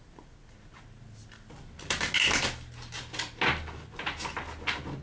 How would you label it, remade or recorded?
recorded